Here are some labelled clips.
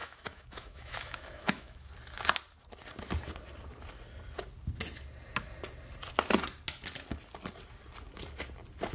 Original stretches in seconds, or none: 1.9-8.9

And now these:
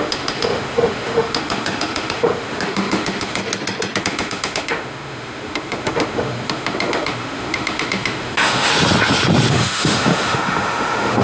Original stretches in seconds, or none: 3.4-4.0; 8.7-9.5

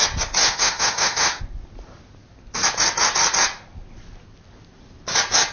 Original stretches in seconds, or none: 0.0-0.4; 1.4-5.5

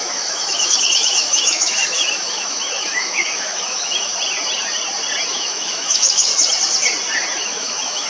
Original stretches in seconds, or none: 4.1-5.3; 6.3-7.4

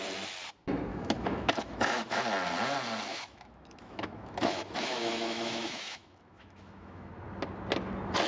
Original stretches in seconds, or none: 0.0-0.9; 2.2-3.1; 7.1-8.3